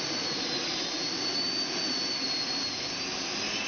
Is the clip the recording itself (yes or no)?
yes